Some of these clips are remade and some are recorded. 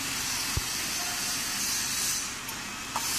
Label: recorded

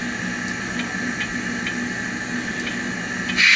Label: recorded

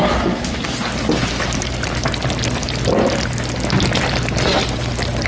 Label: recorded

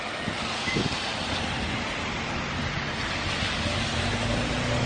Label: recorded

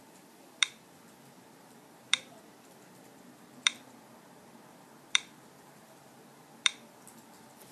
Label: remade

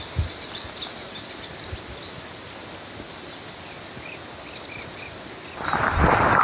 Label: recorded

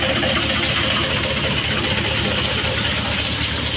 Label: recorded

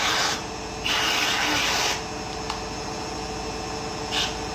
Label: recorded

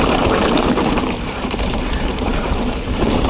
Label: remade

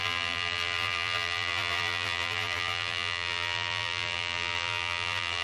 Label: remade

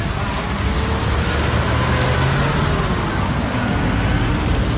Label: recorded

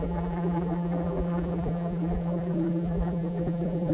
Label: remade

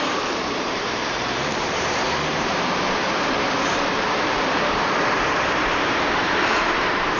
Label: remade